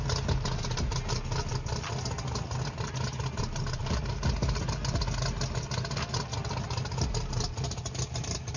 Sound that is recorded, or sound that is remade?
recorded